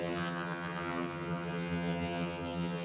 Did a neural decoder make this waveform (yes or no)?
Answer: yes